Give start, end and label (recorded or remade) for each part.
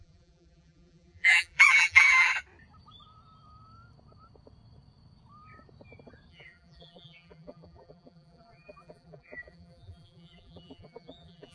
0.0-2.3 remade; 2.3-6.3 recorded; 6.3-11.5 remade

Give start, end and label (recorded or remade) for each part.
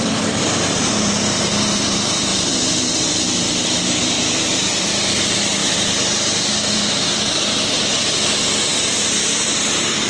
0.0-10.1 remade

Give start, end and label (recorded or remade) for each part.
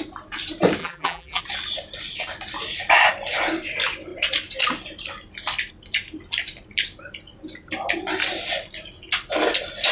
0.0-0.8 recorded; 0.8-1.4 remade; 1.4-9.9 recorded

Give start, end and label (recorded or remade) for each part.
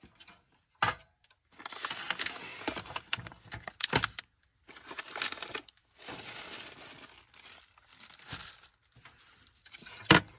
0.0-2.5 recorded; 2.5-3.8 remade; 3.8-10.4 recorded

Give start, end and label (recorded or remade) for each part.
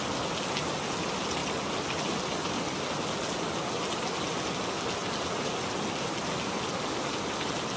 0.0-7.8 recorded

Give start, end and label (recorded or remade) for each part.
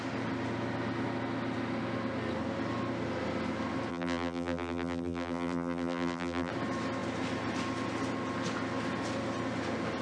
0.0-3.9 recorded; 3.9-6.5 remade; 6.5-10.0 recorded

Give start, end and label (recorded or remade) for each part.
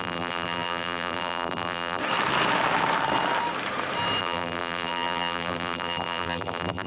0.0-2.0 remade; 2.0-4.2 recorded; 4.2-6.9 remade